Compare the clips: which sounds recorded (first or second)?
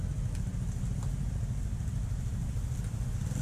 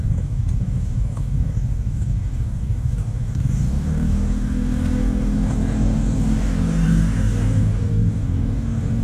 first